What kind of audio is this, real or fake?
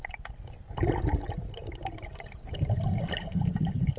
real